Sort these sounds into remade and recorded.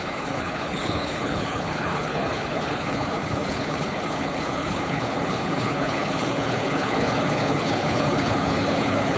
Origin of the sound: remade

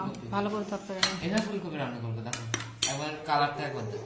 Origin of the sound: recorded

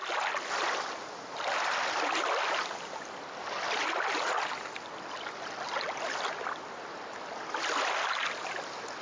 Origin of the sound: recorded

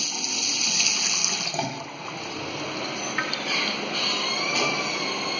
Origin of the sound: recorded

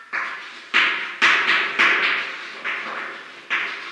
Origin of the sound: recorded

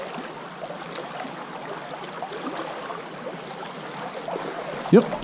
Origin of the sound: recorded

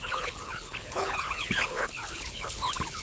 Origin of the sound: remade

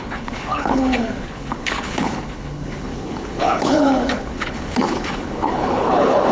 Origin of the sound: remade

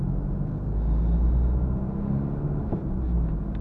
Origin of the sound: recorded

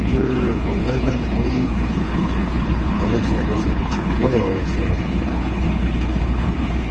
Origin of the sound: remade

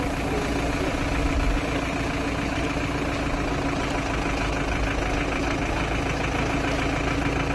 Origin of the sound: recorded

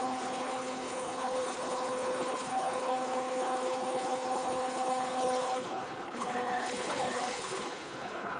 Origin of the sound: remade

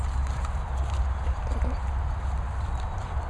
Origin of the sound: recorded